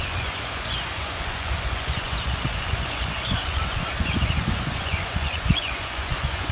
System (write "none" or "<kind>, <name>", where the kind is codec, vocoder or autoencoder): vocoder, Vocos